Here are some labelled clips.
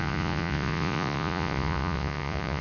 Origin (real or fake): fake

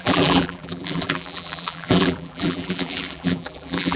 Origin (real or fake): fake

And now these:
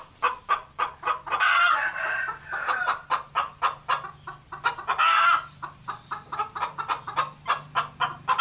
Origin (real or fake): real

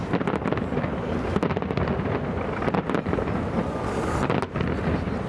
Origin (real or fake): real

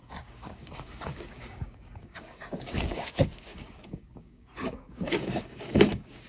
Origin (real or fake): fake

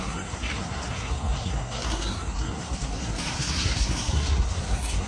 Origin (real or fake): fake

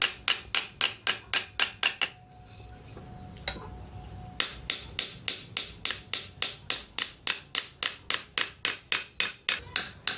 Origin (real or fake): real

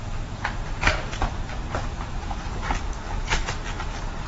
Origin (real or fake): real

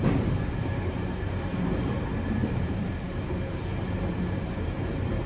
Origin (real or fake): fake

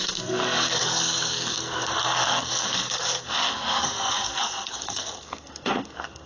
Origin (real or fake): fake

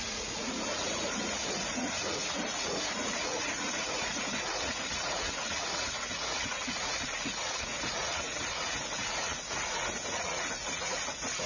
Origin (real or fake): fake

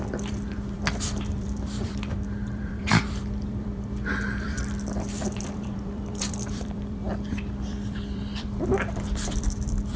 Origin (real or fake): fake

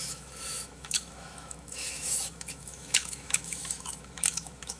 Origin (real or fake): fake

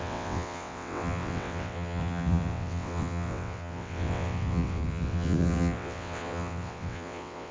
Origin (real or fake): fake